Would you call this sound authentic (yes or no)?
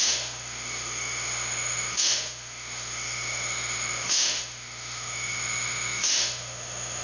no